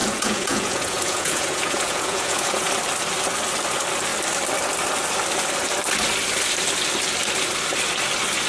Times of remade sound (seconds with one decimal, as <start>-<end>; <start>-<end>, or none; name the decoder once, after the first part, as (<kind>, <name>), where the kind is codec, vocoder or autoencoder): 0.0-2.7 (vocoder, Vocos)